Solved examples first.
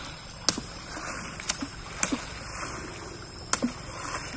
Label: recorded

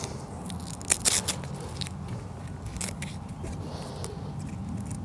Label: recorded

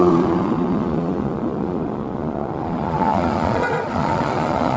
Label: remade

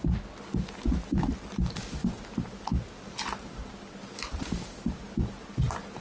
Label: recorded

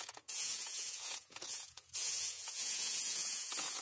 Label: remade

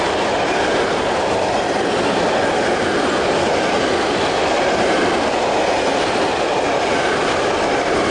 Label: recorded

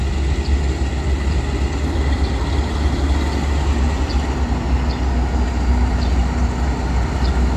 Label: recorded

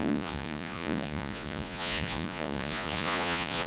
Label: remade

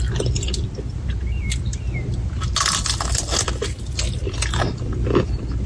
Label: recorded